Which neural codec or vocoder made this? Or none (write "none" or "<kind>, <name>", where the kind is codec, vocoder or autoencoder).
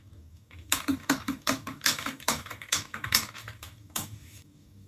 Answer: codec, DAC